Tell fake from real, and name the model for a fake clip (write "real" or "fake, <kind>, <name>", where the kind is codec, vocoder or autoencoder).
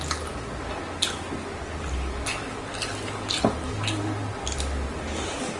real